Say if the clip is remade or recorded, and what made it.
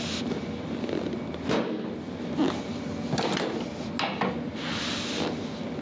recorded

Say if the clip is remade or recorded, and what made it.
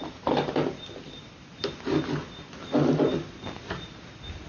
recorded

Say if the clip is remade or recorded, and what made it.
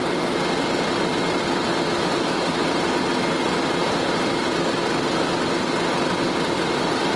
recorded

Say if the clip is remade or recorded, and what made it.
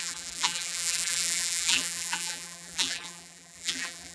remade, vocoder, BigVGAN v2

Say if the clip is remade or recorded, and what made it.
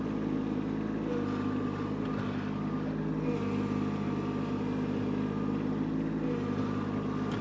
recorded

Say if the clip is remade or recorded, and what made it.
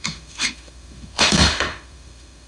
remade, autoencoder, DAC-VAE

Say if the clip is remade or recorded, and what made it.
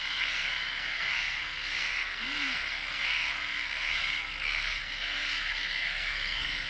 remade, codec, SNAC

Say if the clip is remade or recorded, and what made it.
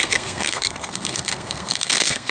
remade, codec, SNAC